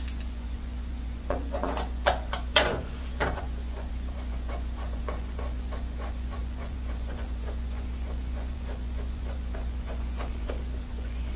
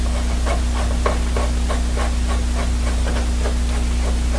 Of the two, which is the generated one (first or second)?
first